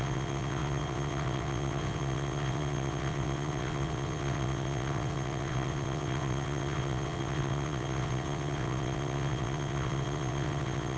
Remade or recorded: remade